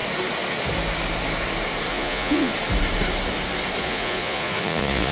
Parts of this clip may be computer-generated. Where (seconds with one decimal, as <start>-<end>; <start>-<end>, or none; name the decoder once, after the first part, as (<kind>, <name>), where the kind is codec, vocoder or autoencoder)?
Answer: 1.9-2.5 (vocoder, Vocos); 3.8-5.1